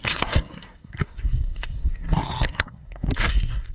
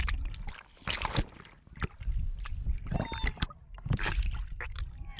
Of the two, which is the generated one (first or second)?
first